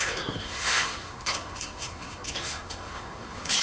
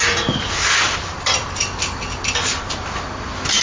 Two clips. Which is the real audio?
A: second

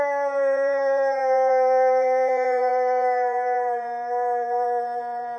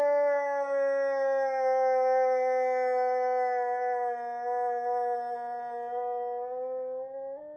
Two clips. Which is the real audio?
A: second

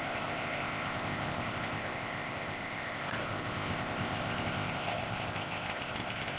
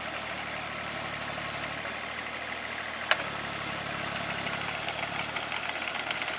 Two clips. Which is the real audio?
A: second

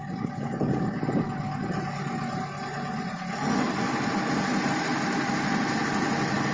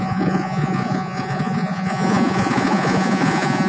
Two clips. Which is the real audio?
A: first